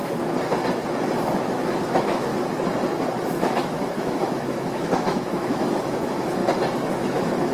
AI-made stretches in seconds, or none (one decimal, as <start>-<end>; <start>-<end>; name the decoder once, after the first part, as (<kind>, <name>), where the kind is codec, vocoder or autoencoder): 1.4-2.3 (autoencoder, DAC-VAE); 3.3-6.4; 7.0-7.5